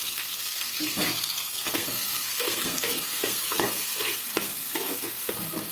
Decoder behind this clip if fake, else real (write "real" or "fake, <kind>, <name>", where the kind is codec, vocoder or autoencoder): fake, codec, SNAC